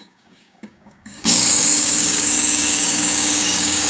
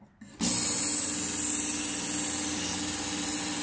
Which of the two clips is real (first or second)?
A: second